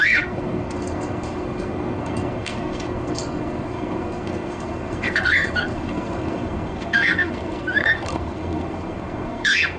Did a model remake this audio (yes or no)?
yes